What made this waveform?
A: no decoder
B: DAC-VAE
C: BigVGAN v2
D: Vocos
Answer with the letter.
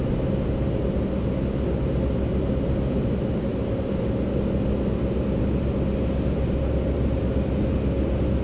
A